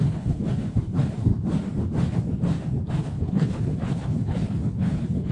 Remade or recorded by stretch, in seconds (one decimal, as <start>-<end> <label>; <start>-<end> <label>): 0.0-1.3 remade; 1.3-2.9 recorded; 2.9-5.3 remade